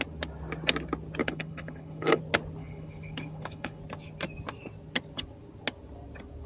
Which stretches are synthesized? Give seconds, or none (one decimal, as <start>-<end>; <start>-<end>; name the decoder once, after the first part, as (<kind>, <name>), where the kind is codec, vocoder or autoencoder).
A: 1.2-2.2 (codec, HILCodec); 2.6-3.8